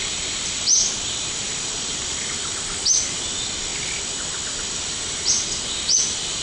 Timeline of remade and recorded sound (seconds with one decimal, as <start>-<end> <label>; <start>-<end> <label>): 0.0-6.4 recorded

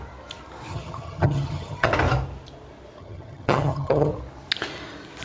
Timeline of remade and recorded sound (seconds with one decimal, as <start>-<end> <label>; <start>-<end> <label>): 0.0-0.7 recorded; 0.7-1.9 remade; 1.9-3.0 recorded; 3.0-4.1 remade; 4.1-5.2 recorded

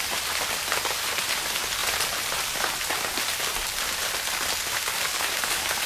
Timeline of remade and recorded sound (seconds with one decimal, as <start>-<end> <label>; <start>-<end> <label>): 0.0-4.8 recorded; 4.8-5.9 remade